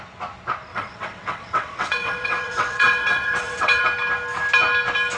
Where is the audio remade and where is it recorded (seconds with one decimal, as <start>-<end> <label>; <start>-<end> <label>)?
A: 0.0-0.7 recorded; 0.7-3.8 remade; 3.8-5.2 recorded